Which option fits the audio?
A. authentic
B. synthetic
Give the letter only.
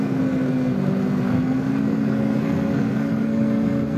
B